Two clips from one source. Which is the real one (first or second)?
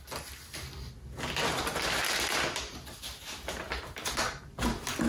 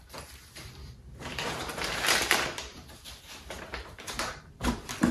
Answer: first